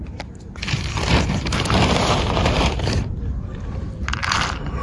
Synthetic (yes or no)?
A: yes